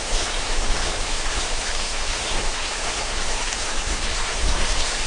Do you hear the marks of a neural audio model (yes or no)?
yes